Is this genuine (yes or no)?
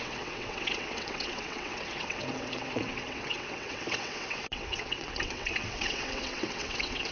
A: no